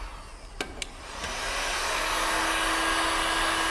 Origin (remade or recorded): recorded